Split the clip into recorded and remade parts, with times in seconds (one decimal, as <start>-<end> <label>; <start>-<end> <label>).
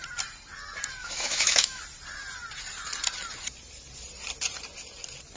0.0-1.0 recorded; 1.0-1.8 remade; 1.8-5.4 recorded